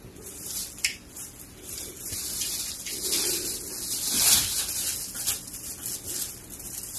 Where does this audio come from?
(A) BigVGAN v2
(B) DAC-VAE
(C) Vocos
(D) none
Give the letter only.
D